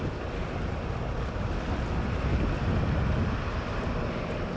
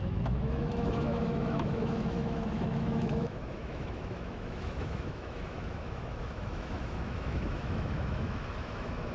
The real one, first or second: first